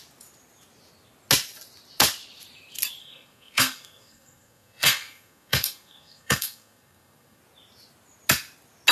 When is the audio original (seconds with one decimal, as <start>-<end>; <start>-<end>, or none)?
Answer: 0.0-3.0; 7.4-8.9